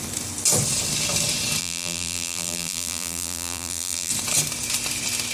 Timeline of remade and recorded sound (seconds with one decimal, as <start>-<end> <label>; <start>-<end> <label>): 0.0-1.6 recorded; 1.6-4.1 remade; 4.1-5.3 recorded